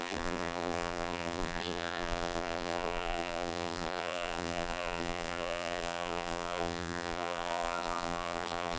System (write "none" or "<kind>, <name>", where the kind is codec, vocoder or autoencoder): vocoder, BigVGAN v2